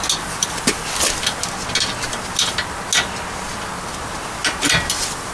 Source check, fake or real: real